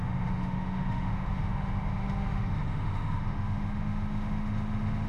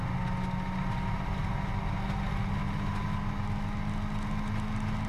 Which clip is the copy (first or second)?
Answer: first